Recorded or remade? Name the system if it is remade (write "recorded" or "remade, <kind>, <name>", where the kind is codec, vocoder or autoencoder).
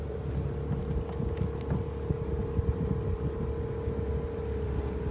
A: recorded